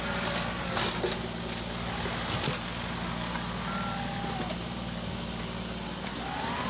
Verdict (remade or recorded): recorded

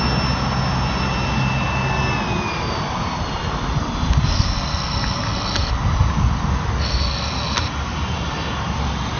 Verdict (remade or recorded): recorded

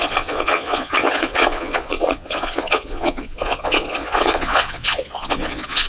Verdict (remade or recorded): remade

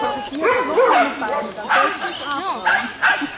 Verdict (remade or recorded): recorded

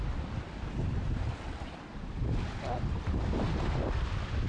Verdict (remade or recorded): recorded